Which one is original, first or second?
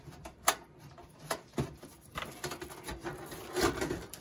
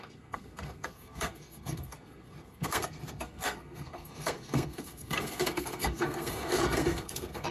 first